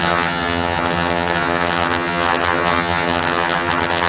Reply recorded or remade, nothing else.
remade